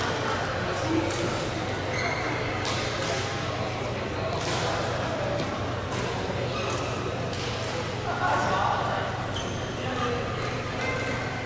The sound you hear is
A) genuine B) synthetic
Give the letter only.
A